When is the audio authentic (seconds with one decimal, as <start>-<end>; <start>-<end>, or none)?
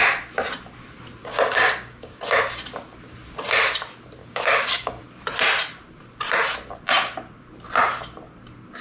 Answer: 0.0-1.2; 2.2-4.2; 5.0-8.8